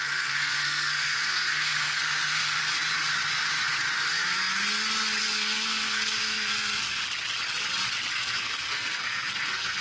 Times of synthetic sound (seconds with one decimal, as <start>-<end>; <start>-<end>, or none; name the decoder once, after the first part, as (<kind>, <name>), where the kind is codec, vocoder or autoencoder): 0.0-2.6 (codec, SNAC); 5.2-7.0; 8.1-9.8